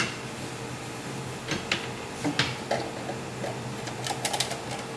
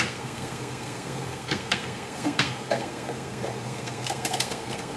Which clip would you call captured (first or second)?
first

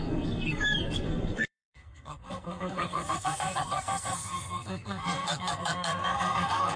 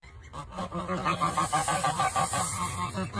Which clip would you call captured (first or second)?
second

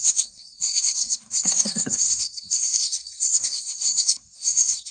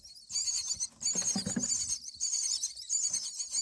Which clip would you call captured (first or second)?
second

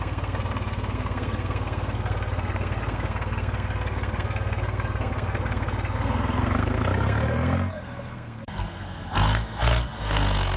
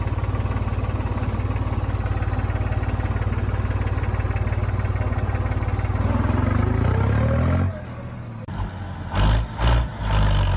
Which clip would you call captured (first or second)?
second